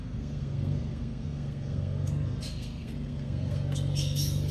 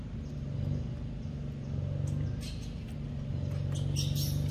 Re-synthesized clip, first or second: first